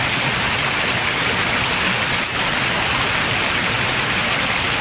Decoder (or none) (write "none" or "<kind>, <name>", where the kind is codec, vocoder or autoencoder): none